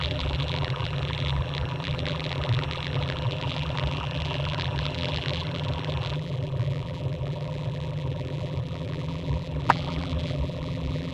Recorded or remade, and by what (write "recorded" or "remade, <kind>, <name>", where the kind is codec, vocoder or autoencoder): remade, vocoder, BigVGAN v2